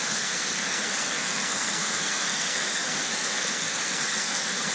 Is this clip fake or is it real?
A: fake